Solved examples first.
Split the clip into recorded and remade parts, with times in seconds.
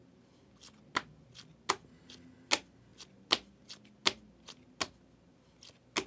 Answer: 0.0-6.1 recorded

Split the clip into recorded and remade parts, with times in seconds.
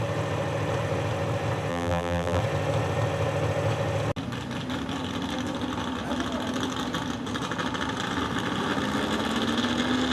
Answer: 0.0-1.7 recorded; 1.7-2.4 remade; 2.4-10.1 recorded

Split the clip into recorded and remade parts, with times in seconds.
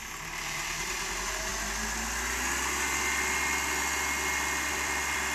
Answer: 0.0-1.5 remade; 1.5-4.7 recorded; 4.7-5.3 remade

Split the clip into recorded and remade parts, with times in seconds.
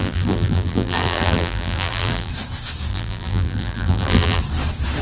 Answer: 0.0-2.3 remade; 2.3-2.9 recorded; 2.9-4.4 remade; 4.4-5.0 recorded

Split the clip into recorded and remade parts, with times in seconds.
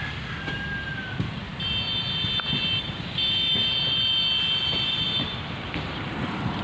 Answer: 0.0-1.5 remade; 1.5-3.0 recorded; 3.0-3.6 remade; 3.6-5.5 recorded; 5.5-6.6 remade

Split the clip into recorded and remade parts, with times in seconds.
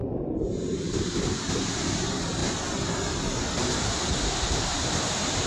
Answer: 0.0-2.4 remade; 2.4-3.5 recorded; 3.5-5.5 remade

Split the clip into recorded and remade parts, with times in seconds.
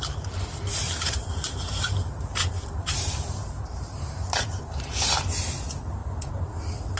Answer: 0.0-0.7 recorded; 0.7-4.7 remade; 4.7-7.0 recorded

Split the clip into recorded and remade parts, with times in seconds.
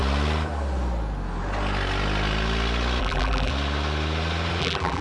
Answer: 0.0-3.0 recorded; 3.0-3.5 remade; 3.5-4.6 recorded; 4.6-5.0 remade